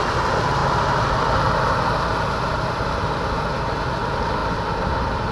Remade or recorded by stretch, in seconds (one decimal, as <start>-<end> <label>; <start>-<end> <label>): 0.0-5.3 recorded